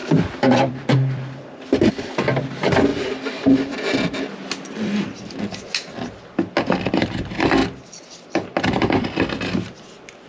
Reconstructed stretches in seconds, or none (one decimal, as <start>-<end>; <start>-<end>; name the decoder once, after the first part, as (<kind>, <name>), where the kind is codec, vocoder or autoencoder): 0.0-1.9 (vocoder, BigVGAN v2)